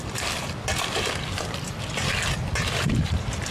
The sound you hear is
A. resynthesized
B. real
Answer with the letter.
A